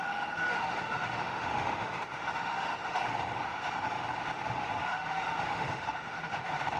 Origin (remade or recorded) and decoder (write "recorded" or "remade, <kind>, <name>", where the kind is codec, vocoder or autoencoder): remade, autoencoder, DAC-VAE